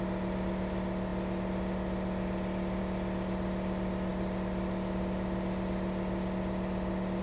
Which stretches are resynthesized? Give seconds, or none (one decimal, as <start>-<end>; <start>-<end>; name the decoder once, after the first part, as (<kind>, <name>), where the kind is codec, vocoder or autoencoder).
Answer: none